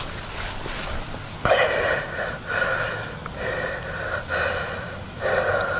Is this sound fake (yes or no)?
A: no